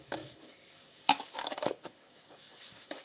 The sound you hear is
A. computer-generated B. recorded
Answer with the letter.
A